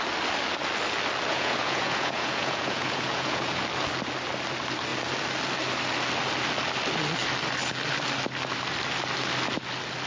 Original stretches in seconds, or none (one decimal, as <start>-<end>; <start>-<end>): 0.0-1.3; 3.6-10.1